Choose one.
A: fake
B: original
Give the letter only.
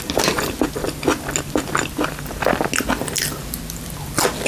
B